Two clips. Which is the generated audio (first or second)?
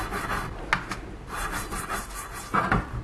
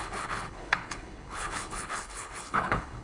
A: second